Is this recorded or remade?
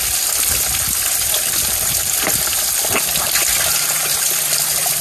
recorded